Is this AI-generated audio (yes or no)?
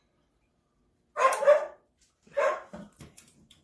yes